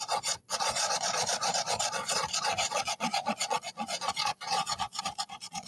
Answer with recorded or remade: remade